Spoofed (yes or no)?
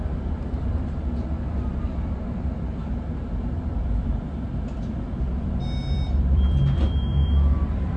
yes